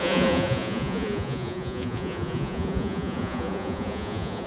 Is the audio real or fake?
fake